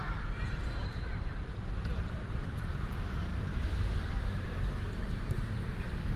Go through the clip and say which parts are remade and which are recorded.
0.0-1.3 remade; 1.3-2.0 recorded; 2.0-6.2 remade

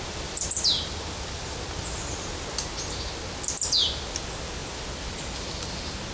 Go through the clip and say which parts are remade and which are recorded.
0.0-6.1 recorded